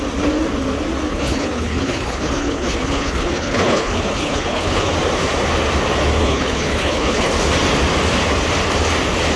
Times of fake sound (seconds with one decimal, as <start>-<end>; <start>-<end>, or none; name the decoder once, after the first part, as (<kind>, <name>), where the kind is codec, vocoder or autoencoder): 1.1-4.9 (codec, HILCodec); 6.2-7.3